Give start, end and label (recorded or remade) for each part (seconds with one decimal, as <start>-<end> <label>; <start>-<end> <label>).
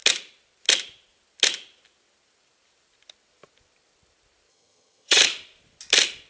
0.0-4.5 recorded; 4.5-5.2 remade; 5.2-6.3 recorded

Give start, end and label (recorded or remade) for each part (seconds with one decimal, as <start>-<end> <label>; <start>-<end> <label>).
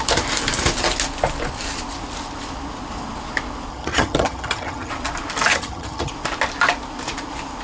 0.0-3.7 recorded; 3.7-4.9 remade; 4.9-5.5 recorded; 5.5-6.1 remade; 6.1-7.6 recorded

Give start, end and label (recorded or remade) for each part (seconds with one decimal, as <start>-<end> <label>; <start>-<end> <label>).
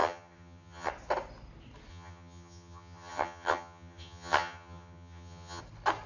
0.0-0.9 remade; 0.9-1.9 recorded; 1.9-5.6 remade; 5.6-6.1 recorded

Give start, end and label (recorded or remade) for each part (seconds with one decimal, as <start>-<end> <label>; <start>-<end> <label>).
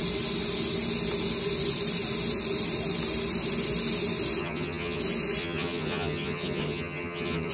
0.0-4.4 recorded; 4.4-5.0 remade; 5.0-5.4 recorded; 5.4-7.5 remade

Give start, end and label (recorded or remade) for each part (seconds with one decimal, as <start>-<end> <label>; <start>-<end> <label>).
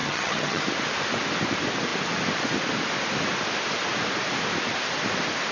0.0-0.6 remade; 0.6-5.5 recorded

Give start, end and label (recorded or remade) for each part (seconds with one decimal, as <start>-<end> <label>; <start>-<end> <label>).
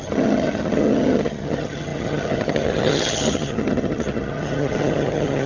0.0-5.5 remade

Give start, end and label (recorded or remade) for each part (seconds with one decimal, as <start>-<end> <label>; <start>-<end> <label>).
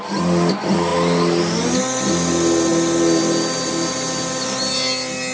0.0-5.3 recorded